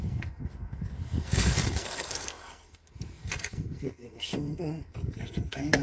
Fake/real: fake